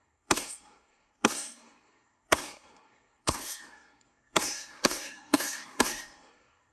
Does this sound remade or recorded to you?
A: remade